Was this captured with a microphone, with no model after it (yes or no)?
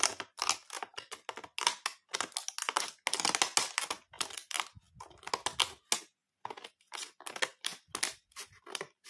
yes